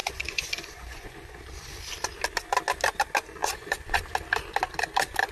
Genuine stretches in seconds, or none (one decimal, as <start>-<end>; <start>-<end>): 1.4-3.4; 4.0-5.3